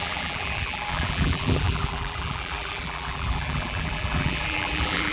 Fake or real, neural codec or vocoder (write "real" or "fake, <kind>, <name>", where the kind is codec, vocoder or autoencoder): fake, vocoder, BigVGAN v2